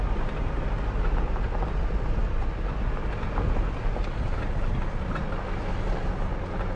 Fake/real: real